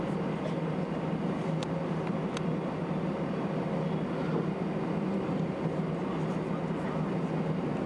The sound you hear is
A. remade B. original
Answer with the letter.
B